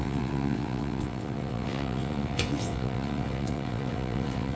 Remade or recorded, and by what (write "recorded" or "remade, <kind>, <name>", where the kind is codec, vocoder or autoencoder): remade, vocoder, WaveNeXt